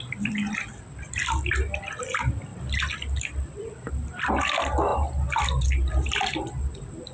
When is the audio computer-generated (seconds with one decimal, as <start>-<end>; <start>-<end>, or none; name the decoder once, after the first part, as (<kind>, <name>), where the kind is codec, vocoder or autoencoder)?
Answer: 0.0-7.1 (vocoder, BigVGAN v2)